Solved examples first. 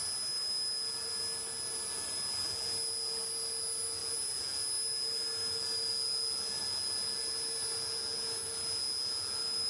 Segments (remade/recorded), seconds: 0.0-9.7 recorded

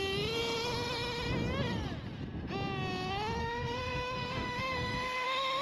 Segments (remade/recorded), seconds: 0.0-3.4 recorded; 3.4-5.6 remade

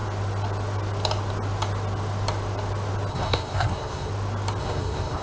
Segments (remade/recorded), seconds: 0.0-3.1 recorded; 3.1-4.1 remade; 4.1-4.6 recorded; 4.6-5.2 remade